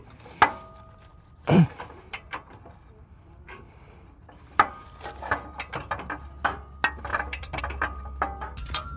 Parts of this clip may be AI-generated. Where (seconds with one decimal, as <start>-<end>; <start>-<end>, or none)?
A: 1.1-4.7; 7.1-7.6